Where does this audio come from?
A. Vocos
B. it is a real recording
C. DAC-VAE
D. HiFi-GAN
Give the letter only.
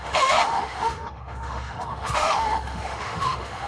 C